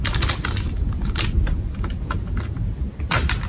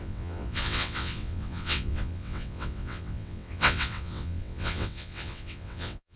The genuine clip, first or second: first